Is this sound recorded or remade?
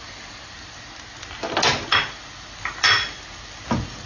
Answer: recorded